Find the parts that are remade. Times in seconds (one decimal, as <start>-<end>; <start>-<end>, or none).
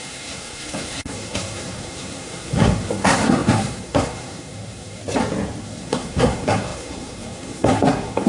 0.0-5.0; 5.6-8.3